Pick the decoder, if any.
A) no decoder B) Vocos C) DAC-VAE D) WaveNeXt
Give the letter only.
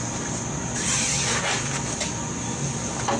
A